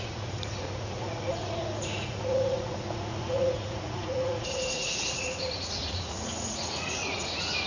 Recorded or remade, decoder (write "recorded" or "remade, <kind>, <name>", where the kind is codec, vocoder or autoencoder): remade, vocoder, Vocos